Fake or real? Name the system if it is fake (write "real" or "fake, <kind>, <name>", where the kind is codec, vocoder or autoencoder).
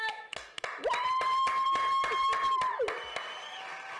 real